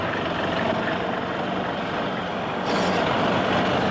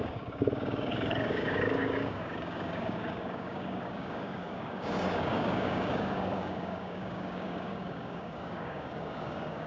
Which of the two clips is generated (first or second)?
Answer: second